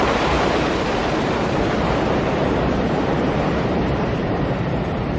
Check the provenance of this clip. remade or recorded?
remade